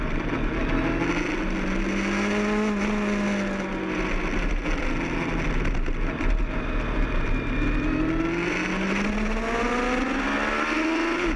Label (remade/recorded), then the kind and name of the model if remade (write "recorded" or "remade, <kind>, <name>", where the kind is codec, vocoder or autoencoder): recorded